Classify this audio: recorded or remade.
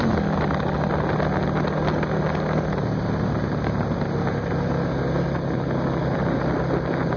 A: recorded